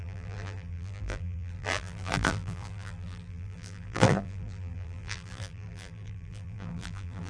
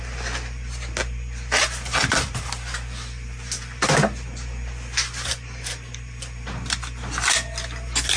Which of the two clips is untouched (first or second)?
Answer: second